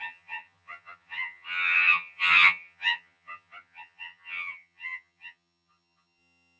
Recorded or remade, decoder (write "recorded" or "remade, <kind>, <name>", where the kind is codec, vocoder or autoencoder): remade, vocoder, HiFi-GAN